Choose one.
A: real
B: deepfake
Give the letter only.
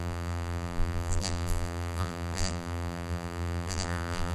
B